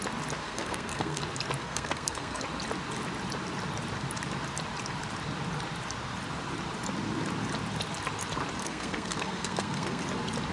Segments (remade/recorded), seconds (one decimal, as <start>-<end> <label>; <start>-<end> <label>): 0.0-0.4 recorded; 0.4-1.2 remade; 1.2-1.6 recorded; 1.6-2.4 remade; 2.4-8.6 recorded; 8.6-10.0 remade; 10.0-10.5 recorded